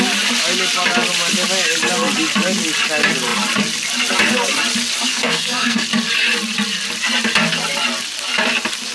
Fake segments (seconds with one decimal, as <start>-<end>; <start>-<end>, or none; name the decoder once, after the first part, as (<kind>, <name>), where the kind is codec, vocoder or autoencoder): 5.1-5.8 (codec, SNAC)